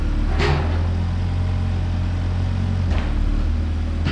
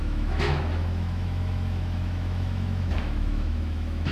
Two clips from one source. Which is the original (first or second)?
first